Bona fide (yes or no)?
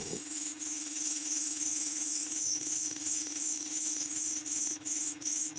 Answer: no